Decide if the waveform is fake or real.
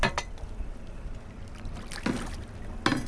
real